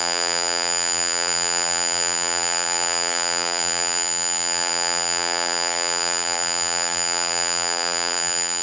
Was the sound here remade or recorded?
remade